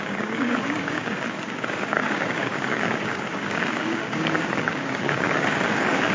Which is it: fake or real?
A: fake